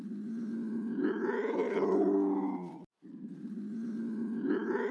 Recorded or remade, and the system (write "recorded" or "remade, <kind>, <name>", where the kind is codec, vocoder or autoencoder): recorded